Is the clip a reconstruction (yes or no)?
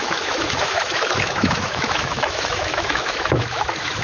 yes